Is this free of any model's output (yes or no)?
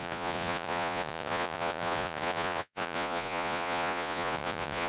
no